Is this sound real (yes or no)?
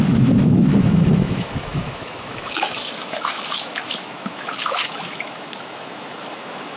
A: no